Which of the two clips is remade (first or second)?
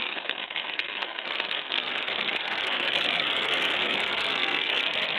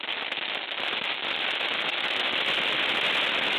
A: first